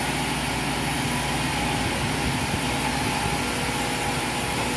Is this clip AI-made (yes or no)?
no